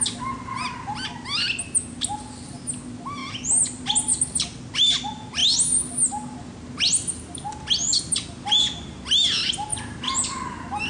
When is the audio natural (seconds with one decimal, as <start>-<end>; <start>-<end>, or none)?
0.0-10.9